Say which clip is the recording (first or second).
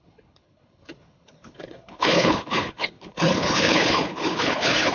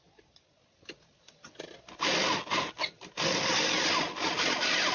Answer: second